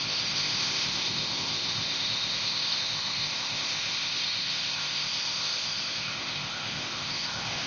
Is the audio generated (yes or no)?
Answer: yes